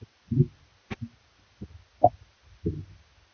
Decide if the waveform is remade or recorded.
recorded